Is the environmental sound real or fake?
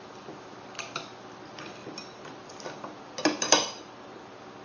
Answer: real